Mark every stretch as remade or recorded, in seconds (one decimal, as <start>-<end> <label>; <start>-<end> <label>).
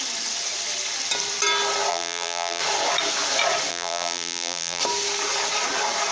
0.0-1.9 recorded; 1.9-2.6 remade; 2.6-3.7 recorded; 3.7-4.8 remade; 4.8-6.1 recorded